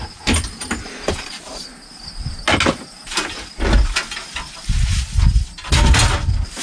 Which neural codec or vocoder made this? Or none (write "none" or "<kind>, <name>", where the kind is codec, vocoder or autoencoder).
none